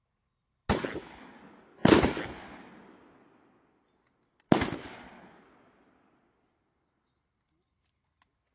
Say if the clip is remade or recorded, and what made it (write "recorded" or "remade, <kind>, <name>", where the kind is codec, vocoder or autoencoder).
recorded